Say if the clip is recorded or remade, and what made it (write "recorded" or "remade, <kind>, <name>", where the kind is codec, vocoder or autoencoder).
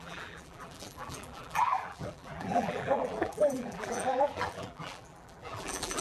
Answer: remade, vocoder, BigVGAN v2